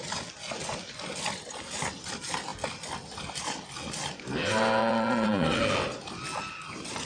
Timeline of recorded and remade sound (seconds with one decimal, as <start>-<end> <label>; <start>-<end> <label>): 0.0-4.8 recorded; 4.8-5.6 remade; 5.6-7.1 recorded